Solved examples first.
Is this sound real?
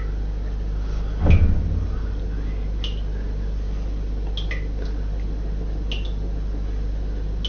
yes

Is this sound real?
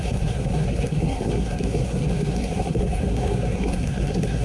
no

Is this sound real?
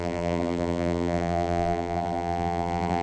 no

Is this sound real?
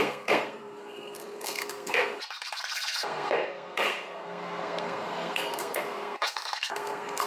no